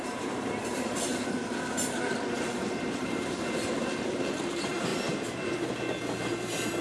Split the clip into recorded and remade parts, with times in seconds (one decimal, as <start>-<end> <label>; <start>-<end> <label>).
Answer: 0.0-1.1 remade; 1.1-3.0 recorded; 3.0-4.9 remade; 4.9-6.8 recorded